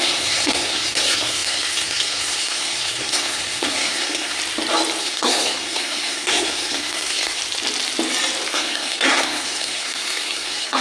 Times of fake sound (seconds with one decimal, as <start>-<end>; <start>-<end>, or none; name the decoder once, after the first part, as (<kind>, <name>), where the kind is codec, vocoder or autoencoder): 0.0-4.4 (codec, SNAC); 5.0-7.4; 8.5-10.8